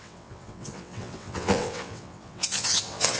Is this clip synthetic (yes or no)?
yes